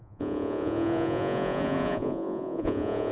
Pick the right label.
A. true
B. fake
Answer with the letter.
B